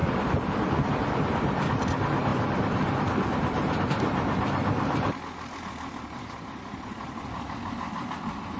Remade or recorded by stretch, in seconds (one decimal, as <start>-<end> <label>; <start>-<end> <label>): 0.0-8.6 recorded